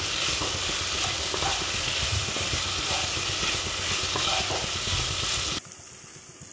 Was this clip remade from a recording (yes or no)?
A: no